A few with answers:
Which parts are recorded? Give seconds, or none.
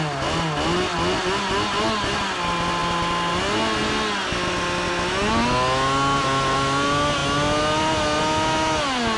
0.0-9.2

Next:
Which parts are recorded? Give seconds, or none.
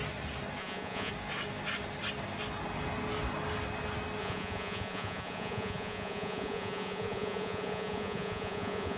0.0-0.6; 1.1-4.2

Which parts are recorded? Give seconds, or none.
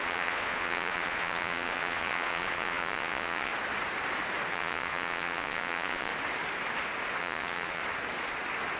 3.5-4.5; 6.1-7.2; 7.8-8.8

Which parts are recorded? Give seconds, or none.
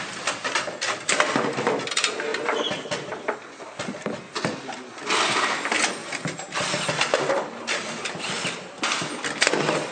0.0-9.9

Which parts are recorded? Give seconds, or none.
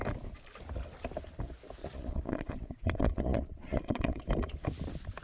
0.0-1.8; 4.2-5.2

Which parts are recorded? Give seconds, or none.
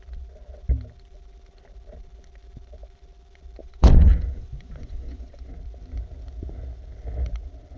0.0-3.6; 5.5-7.8